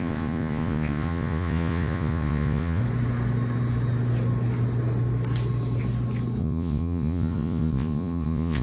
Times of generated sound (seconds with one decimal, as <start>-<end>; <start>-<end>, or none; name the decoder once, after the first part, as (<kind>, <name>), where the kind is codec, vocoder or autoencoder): 0.0-2.8 (vocoder, Vocos); 6.4-8.6